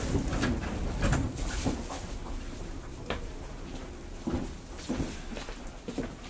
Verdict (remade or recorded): recorded